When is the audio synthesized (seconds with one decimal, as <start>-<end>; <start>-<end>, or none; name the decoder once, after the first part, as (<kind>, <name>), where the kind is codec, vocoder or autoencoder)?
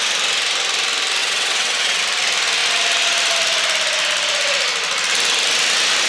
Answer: 1.2-2.0 (vocoder, WaveNeXt)